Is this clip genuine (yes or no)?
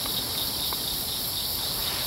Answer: yes